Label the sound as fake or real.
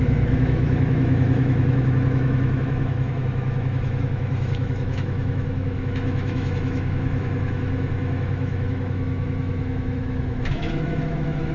fake